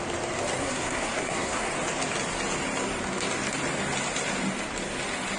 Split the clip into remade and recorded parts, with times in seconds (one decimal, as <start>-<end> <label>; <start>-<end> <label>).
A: 0.0-0.6 recorded; 0.6-1.7 remade; 1.7-5.4 recorded